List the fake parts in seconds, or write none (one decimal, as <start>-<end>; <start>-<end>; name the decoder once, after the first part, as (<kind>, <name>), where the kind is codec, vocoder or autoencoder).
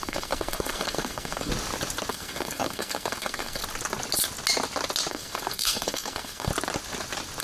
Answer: 0.0-1.5 (codec, SNAC); 2.1-3.6; 5.1-6.5